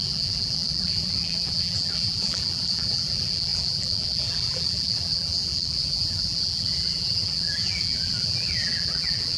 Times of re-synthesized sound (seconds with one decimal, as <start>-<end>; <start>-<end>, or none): 0.0-9.4